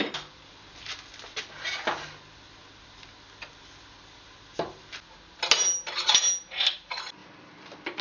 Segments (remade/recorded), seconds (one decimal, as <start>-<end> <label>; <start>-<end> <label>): 0.0-8.0 recorded